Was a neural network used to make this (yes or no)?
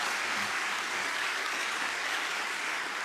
yes